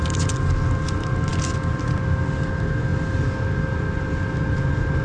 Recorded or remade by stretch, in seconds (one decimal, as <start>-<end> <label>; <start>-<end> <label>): 0.0-5.0 recorded